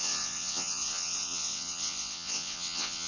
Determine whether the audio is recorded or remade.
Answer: remade